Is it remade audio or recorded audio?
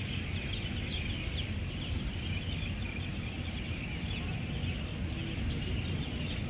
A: recorded